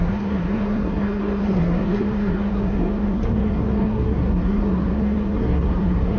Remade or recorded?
remade